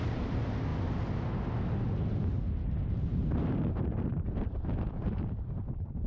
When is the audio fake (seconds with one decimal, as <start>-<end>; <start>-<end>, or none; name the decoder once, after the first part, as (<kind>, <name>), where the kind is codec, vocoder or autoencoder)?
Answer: 0.0-0.7 (vocoder, BigVGAN v2); 2.7-6.1